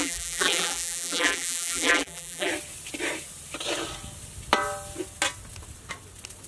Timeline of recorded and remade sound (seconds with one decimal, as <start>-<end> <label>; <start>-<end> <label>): 0.0-2.5 remade; 2.5-6.5 recorded